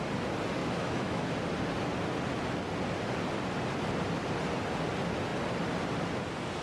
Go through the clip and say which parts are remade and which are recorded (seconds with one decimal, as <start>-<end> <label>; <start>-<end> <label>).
0.0-0.6 recorded; 0.6-1.3 remade; 1.3-6.6 recorded